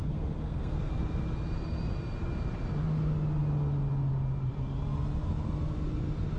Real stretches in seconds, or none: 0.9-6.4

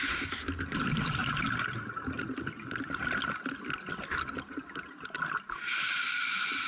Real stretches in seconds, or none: 0.0-6.7